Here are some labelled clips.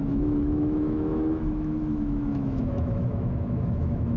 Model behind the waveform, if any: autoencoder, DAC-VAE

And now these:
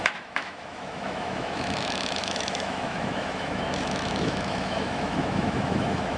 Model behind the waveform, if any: autoencoder, DAC-VAE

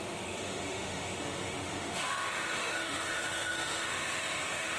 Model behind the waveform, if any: autoencoder, DAC-VAE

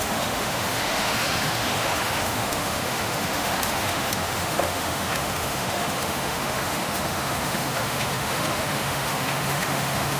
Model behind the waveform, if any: autoencoder, DAC-VAE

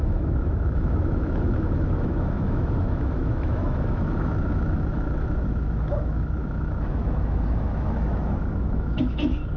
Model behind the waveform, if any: autoencoder, DAC-VAE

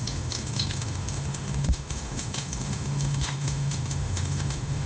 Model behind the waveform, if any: autoencoder, DAC-VAE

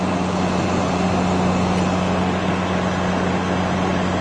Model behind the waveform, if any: none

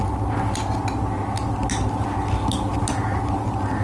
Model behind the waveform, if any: none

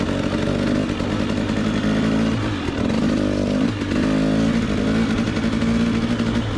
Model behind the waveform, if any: none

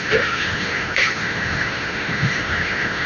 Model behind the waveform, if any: autoencoder, DAC-VAE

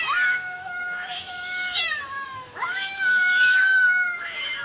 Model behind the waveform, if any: autoencoder, DAC-VAE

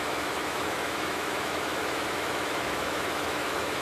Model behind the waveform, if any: autoencoder, DAC-VAE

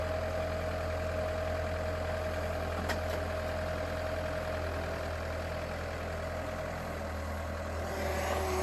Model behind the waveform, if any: none